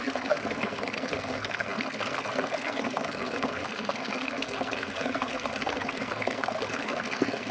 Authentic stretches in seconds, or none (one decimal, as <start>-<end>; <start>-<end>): none